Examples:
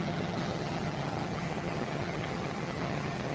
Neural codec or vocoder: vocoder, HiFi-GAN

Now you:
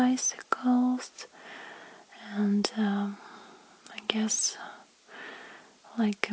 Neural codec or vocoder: none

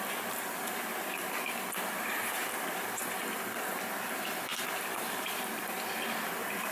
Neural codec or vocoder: vocoder, BigVGAN v2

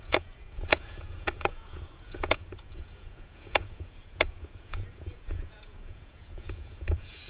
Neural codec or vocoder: vocoder, Vocos